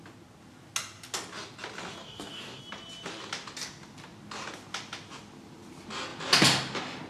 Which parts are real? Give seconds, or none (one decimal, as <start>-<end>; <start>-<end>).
0.0-2.0; 2.6-7.1